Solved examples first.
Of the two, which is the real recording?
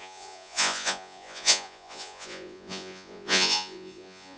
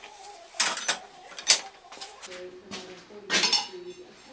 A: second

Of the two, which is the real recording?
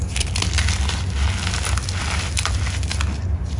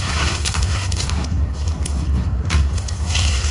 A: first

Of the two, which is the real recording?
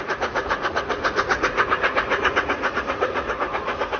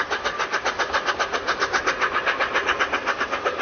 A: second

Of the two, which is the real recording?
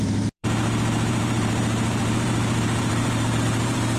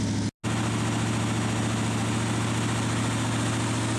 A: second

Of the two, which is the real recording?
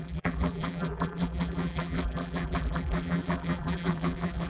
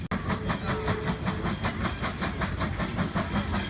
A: second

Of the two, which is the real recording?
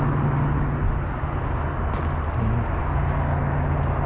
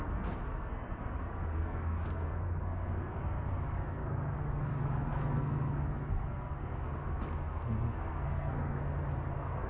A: first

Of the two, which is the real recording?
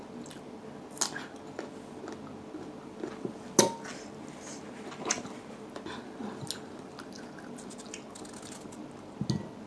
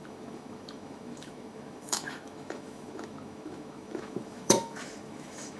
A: first